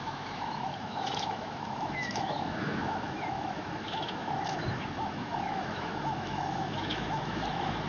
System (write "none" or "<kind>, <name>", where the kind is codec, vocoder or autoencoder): autoencoder, DAC-VAE